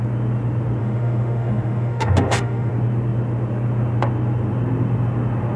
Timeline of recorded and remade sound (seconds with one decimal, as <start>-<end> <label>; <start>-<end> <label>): 0.0-0.8 recorded; 0.8-2.7 remade; 2.7-5.6 recorded